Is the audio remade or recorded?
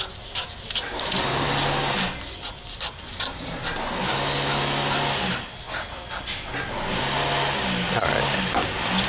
recorded